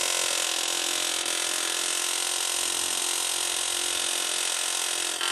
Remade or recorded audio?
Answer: recorded